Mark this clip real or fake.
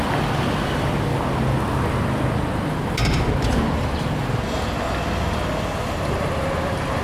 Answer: real